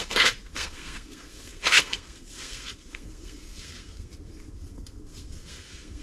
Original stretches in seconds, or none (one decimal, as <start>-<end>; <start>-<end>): none